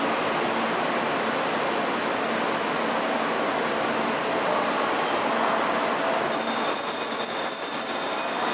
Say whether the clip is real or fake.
real